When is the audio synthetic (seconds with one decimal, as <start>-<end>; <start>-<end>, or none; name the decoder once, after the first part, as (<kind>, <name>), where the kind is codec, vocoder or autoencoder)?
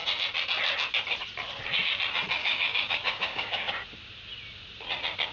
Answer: 2.4-3.7 (codec, DAC)